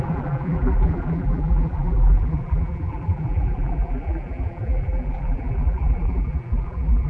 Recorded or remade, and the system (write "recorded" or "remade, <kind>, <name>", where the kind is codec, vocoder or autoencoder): remade, vocoder, BigVGAN v2